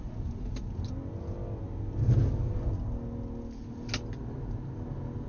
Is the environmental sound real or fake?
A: real